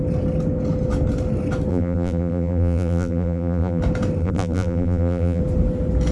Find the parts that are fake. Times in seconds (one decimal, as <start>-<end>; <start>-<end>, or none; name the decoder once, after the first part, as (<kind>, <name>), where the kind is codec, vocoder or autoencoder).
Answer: 1.7-3.8 (vocoder, BigVGAN v2); 4.2-5.4